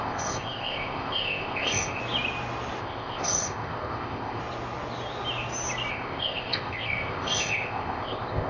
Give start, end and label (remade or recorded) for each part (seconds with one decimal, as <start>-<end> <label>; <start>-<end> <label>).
0.0-2.0 remade; 2.0-2.8 recorded; 2.8-4.4 remade; 4.4-5.9 recorded; 5.9-8.5 remade